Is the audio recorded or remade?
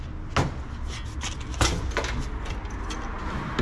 recorded